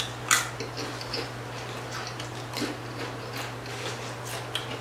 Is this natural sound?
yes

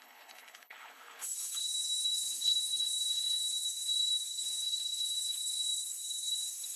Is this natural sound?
no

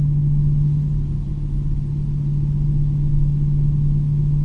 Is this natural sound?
yes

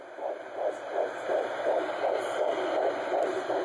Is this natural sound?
yes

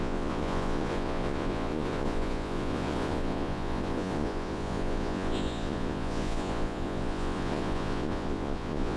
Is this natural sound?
no